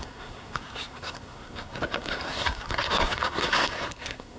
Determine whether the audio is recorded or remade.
remade